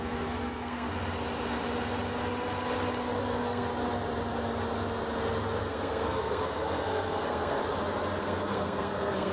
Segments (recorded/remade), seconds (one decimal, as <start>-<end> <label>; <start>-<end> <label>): 0.0-0.9 remade; 0.9-3.2 recorded; 3.2-3.7 remade; 3.7-5.6 recorded; 5.6-7.6 remade; 7.6-8.2 recorded; 8.2-9.3 remade

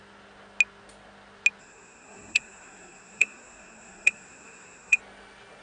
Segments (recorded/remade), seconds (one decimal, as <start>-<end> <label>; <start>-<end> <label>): 0.0-1.6 recorded; 1.6-5.0 remade; 5.0-5.6 recorded